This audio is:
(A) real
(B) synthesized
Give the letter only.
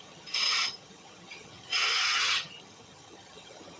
B